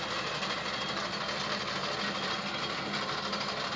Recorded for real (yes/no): yes